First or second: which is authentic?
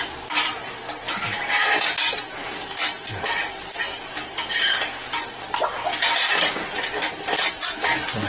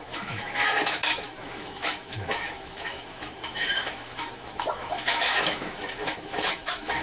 first